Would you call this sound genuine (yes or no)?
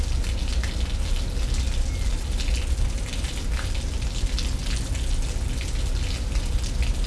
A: yes